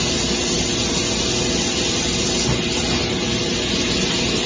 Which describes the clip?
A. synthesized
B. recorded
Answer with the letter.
B